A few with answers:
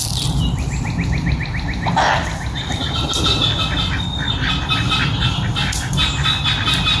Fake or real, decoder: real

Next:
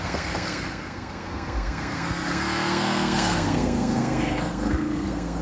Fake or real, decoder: fake, codec, SNAC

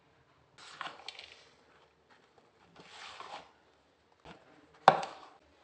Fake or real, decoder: real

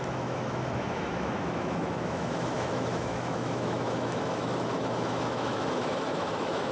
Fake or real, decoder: fake, autoencoder, DAC-VAE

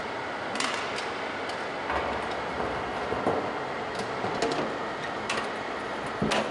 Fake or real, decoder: real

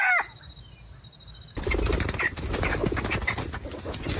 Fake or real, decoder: real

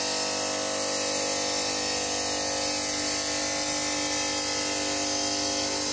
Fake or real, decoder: real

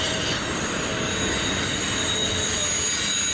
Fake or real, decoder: real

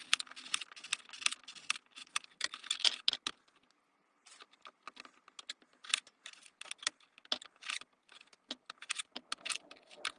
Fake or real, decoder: real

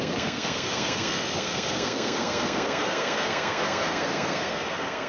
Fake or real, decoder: fake, codec, SNAC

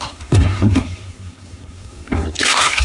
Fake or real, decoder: fake, codec, SNAC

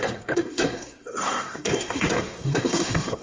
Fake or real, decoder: fake, codec, SNAC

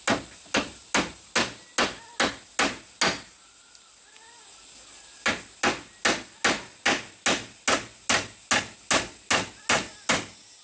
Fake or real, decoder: real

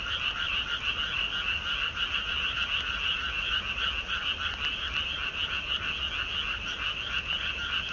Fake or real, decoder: real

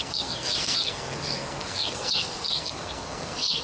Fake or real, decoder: fake, codec, SNAC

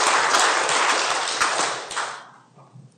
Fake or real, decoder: real